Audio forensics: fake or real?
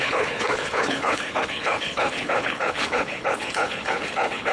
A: fake